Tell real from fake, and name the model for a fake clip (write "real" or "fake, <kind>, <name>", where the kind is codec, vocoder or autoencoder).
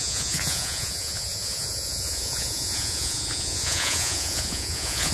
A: fake, vocoder, Vocos